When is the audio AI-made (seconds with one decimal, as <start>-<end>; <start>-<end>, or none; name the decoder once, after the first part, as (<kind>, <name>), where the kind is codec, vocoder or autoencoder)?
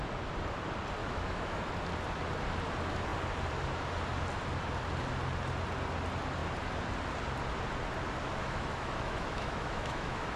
1.0-1.7 (autoencoder, DAC-VAE); 8.4-10.4